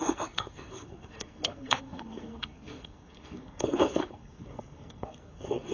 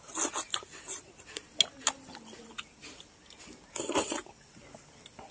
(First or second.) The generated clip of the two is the first